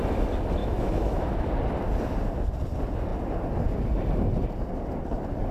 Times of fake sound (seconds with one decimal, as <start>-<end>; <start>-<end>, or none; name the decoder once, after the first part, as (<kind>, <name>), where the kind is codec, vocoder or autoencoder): 0.6-1.5 (autoencoder, DAC-VAE)